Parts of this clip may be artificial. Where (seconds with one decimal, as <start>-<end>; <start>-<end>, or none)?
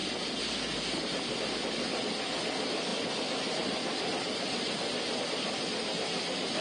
none